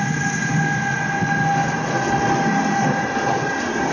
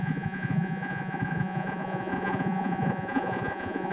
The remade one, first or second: second